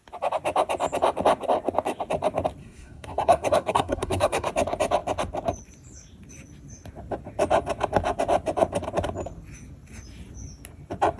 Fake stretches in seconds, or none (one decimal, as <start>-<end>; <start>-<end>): 2.6-4.5